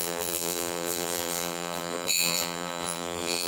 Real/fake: fake